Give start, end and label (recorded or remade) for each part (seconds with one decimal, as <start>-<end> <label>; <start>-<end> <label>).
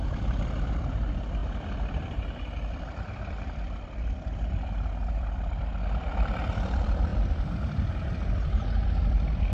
0.0-9.5 remade